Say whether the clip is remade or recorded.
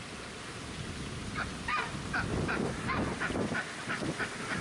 recorded